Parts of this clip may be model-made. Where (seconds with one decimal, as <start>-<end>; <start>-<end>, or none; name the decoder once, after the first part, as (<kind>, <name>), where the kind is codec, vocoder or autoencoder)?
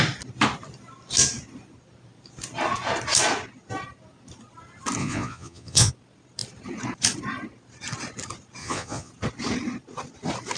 5.0-5.9 (vocoder, Vocos); 8.6-9.1